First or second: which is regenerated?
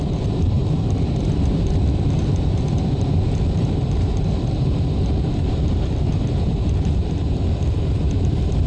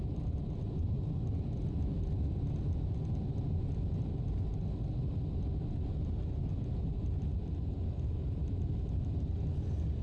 first